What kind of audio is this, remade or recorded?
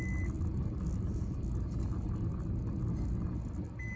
recorded